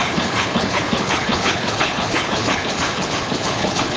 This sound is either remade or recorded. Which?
remade